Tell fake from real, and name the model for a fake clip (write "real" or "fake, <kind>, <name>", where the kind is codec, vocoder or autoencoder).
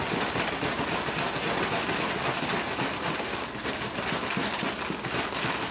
real